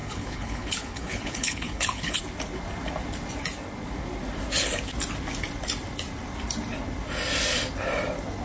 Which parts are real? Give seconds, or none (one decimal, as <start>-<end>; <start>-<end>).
2.2-8.4

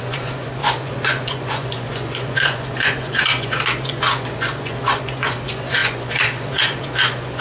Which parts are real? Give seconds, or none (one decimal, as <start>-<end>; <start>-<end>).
none

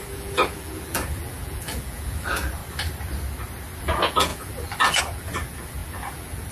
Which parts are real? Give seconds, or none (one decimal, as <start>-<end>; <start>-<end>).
2.6-3.8

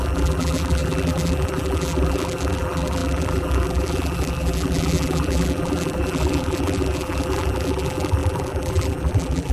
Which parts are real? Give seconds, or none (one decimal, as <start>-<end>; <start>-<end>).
none

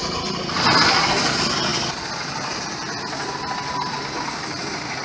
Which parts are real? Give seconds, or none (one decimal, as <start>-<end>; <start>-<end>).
0.6-1.7